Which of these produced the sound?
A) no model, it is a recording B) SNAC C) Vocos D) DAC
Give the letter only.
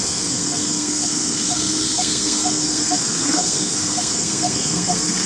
B